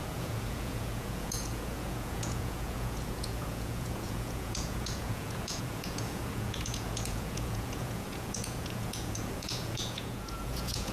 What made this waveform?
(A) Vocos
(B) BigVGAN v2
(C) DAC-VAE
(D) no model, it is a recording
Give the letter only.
A